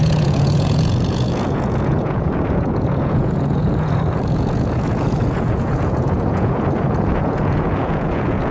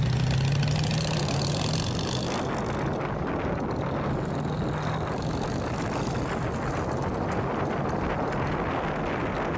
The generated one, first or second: first